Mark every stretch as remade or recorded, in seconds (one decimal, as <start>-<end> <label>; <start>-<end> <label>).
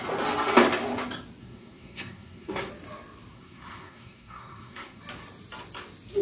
0.0-1.4 recorded; 1.4-2.7 remade; 2.7-3.3 recorded; 3.3-5.0 remade; 5.0-6.2 recorded